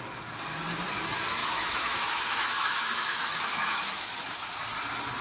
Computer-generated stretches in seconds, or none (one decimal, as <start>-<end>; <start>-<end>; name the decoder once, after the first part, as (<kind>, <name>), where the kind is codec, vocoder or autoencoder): 1.4-4.5 (autoencoder, DAC-VAE)